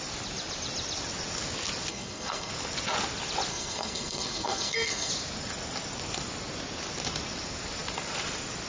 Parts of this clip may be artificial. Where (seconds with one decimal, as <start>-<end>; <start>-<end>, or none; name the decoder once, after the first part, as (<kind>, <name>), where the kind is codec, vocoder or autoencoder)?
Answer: 1.9-2.5 (codec, SNAC); 3.5-5.1